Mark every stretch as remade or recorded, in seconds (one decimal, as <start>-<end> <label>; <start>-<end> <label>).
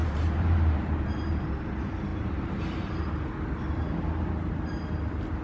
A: 0.0-1.4 remade; 1.4-2.1 recorded; 2.1-3.0 remade; 3.0-5.4 recorded